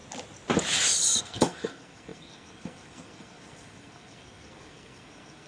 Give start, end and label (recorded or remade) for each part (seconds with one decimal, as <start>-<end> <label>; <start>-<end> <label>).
0.0-1.2 recorded; 1.2-5.5 remade